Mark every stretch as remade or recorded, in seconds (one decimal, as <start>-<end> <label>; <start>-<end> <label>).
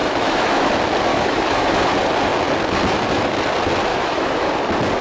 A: 0.0-0.7 remade; 0.7-1.1 recorded; 1.1-1.7 remade; 1.7-3.9 recorded; 3.9-4.5 remade; 4.5-5.0 recorded